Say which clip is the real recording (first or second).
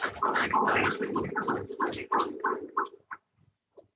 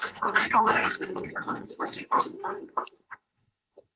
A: first